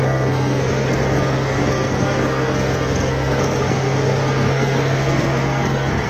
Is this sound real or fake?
fake